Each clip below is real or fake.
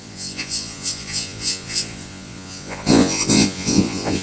fake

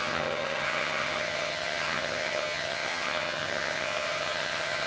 fake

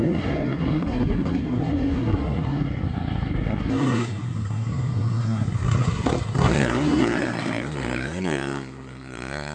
fake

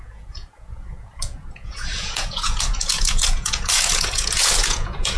fake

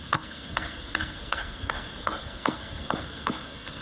fake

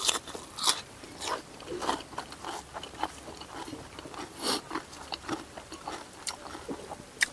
fake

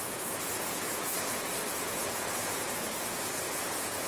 fake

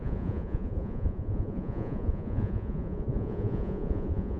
fake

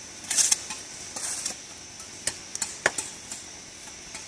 real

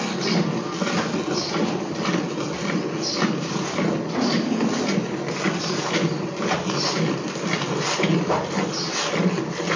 real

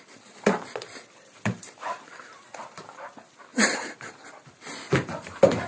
fake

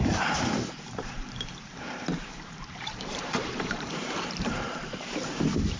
fake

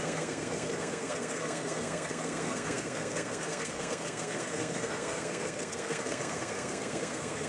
fake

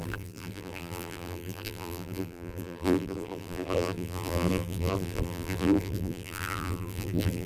fake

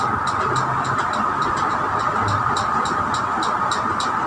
real